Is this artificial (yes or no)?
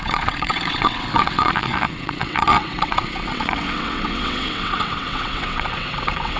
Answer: yes